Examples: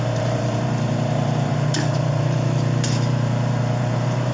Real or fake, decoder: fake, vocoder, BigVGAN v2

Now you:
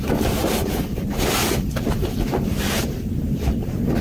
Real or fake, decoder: fake, vocoder, BigVGAN v2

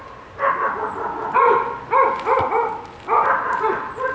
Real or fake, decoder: real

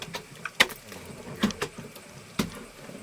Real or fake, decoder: real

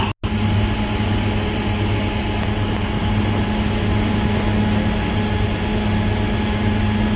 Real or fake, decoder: real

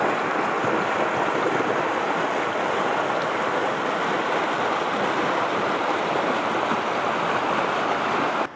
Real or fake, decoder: real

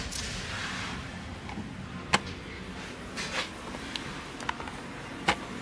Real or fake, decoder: real